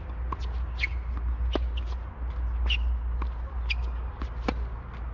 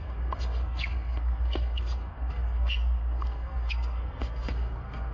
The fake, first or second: second